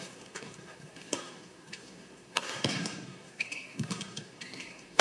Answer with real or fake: fake